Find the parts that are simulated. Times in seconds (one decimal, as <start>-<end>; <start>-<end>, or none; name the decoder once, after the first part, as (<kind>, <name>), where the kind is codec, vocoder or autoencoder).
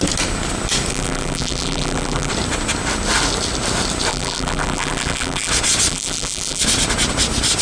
0.9-2.3 (vocoder, BigVGAN v2); 4.1-5.5; 5.9-6.6